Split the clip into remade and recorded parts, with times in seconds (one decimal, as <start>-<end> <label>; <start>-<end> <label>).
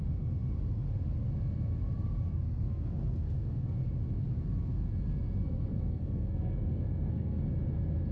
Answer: 0.0-2.3 recorded; 2.3-3.9 remade; 3.9-5.4 recorded; 5.4-7.4 remade; 7.4-8.1 recorded